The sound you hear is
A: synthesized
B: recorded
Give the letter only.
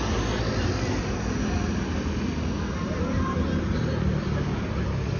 B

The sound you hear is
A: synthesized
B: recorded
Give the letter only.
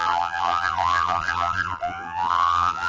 A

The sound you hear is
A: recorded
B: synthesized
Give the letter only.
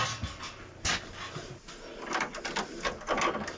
A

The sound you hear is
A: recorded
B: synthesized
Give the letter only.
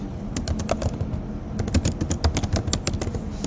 A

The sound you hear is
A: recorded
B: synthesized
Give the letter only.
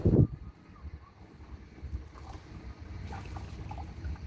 A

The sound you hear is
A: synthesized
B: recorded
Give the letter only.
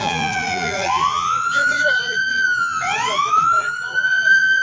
A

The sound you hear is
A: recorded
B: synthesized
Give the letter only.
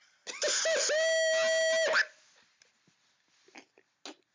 A